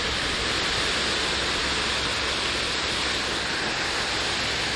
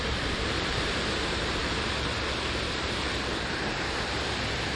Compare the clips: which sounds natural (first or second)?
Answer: first